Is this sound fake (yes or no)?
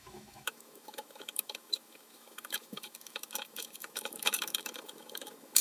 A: yes